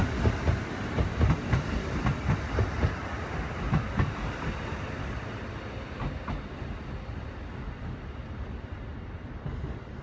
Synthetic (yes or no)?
no